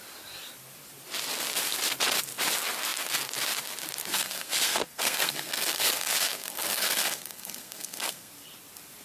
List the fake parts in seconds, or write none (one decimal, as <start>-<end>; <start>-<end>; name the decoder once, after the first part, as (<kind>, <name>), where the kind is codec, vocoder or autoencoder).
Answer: 4.1-8.3 (codec, SNAC)